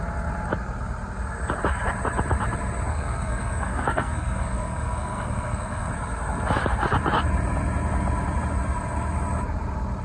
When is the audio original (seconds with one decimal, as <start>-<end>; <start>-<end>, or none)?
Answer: 0.0-2.9; 5.9-10.0